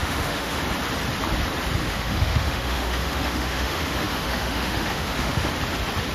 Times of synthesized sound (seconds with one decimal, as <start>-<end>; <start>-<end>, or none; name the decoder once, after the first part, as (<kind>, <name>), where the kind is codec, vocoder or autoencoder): 0.0-0.6 (autoencoder, DAC-VAE); 1.8-5.5